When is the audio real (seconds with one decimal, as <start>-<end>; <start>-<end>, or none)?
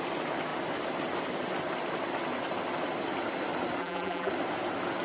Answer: 0.0-3.8; 4.3-5.0